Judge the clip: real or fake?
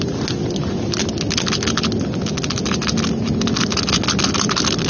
real